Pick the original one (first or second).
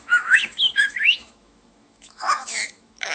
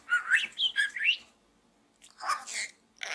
second